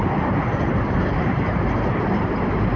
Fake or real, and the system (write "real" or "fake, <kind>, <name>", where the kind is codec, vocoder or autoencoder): fake, vocoder, BigVGAN v2